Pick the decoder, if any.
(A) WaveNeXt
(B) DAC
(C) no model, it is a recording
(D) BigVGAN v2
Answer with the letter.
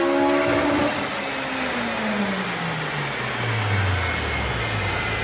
C